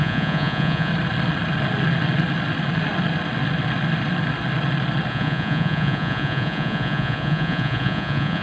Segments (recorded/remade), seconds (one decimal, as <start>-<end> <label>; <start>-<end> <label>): 0.0-0.9 remade; 0.9-5.1 recorded; 5.1-8.4 remade